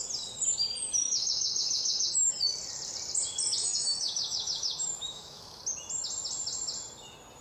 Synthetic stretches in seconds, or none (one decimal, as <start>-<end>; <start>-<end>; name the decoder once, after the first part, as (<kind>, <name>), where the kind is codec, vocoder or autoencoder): 1.0-2.3 (autoencoder, DAC-VAE); 3.6-5.6